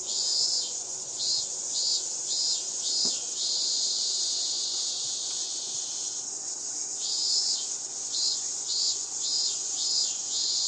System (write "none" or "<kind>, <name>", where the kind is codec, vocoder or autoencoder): vocoder, Vocos